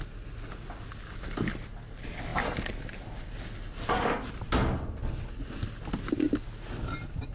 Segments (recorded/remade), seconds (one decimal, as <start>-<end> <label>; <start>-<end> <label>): 0.0-7.3 recorded